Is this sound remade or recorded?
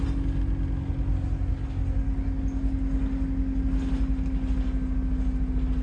recorded